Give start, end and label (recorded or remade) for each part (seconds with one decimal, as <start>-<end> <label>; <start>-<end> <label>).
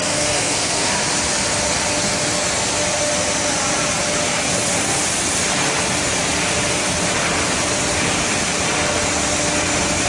0.0-0.9 remade; 0.9-10.1 recorded